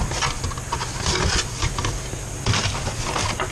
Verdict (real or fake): real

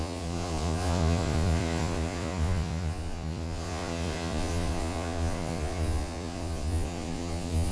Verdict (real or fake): fake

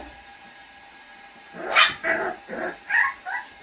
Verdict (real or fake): real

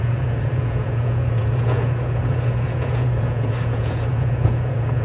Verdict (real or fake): fake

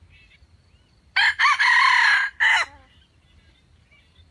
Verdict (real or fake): real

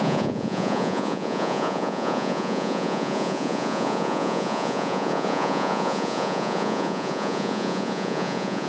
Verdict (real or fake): fake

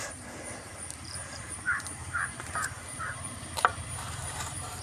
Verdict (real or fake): fake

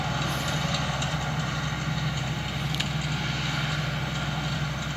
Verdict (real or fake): real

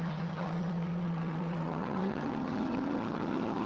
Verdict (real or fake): fake